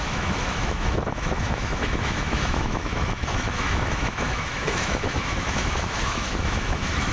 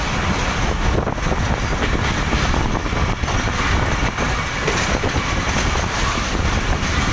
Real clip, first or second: second